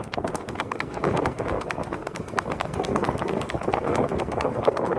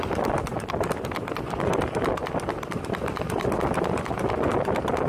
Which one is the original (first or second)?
second